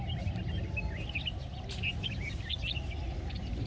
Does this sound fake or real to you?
real